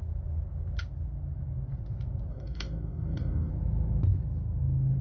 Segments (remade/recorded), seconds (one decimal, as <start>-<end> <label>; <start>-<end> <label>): 0.0-2.3 recorded; 2.3-3.5 remade; 3.5-5.0 recorded